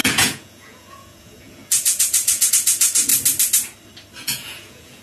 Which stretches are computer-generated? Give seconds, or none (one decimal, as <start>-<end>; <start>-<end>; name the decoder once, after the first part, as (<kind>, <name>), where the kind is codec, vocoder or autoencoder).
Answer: 0.0-3.1 (vocoder, Vocos); 4.2-5.0